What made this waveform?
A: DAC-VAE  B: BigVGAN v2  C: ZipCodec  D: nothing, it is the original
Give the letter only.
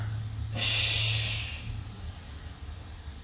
D